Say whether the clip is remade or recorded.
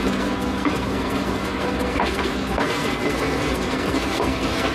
remade